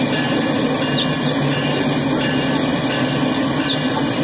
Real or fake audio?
real